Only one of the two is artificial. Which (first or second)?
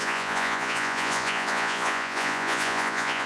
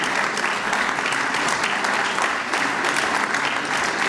first